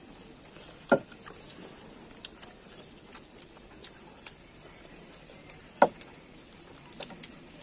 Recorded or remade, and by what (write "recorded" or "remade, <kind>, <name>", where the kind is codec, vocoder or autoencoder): recorded